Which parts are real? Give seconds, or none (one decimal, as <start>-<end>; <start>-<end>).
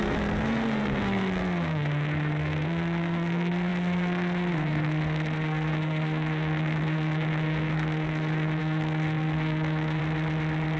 10.0-10.8